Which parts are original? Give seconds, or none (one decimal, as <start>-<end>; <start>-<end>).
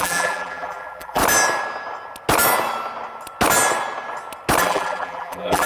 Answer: 1.2-4.6